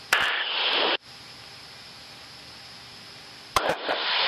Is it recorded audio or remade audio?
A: recorded